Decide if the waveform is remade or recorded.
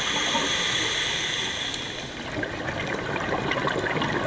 recorded